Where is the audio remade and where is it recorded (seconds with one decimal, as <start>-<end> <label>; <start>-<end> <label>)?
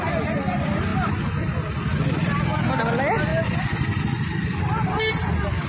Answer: 0.0-5.7 recorded